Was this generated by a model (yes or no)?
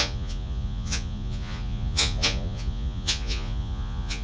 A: yes